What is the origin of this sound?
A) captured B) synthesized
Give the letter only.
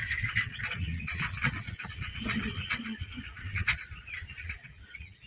B